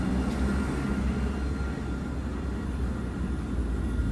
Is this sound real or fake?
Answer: real